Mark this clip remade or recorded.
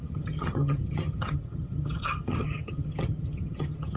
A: remade